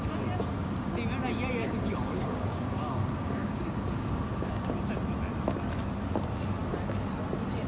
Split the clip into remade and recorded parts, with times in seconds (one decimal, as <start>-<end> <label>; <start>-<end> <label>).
0.0-1.6 recorded; 1.6-4.7 remade; 4.7-7.7 recorded

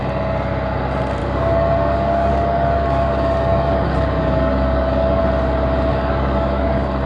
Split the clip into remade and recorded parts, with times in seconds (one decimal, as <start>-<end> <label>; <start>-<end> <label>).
0.0-1.2 recorded; 1.2-5.2 remade; 5.2-5.9 recorded; 5.9-7.1 remade

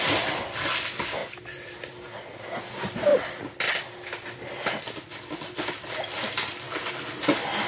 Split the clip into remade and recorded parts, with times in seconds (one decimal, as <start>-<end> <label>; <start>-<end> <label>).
0.0-7.7 recorded